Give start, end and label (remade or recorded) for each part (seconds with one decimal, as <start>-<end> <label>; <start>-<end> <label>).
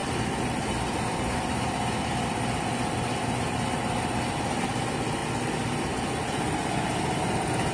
0.0-7.7 recorded